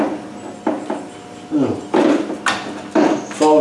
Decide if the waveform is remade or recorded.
recorded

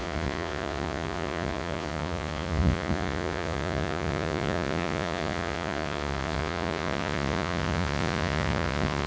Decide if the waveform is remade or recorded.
remade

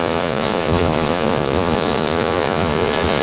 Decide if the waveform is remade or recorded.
remade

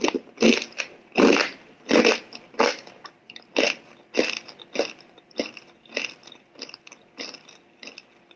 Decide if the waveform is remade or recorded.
recorded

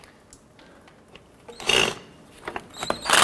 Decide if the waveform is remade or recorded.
recorded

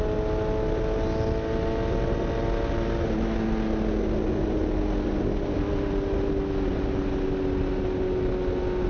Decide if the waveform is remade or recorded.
recorded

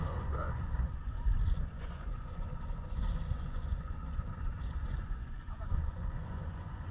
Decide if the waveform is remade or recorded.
remade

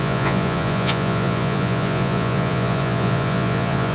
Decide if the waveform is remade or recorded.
remade